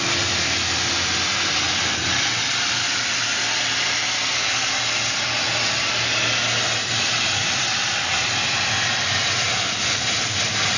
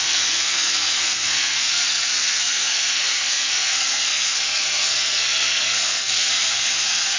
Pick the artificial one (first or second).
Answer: second